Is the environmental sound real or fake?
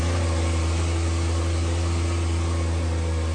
real